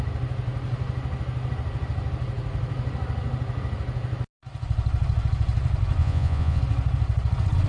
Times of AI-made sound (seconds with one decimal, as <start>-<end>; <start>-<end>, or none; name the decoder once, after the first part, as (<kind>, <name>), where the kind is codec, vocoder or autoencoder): 6.0-6.6 (vocoder, Vocos)